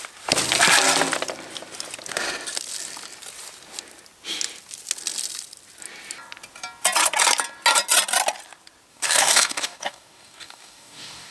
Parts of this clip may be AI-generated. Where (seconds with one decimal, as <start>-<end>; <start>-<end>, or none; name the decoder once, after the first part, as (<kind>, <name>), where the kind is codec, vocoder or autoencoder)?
8.9-11.3 (codec, DAC)